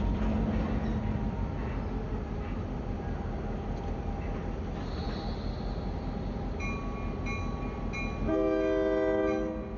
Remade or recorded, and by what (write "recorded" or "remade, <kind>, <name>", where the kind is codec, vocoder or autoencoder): recorded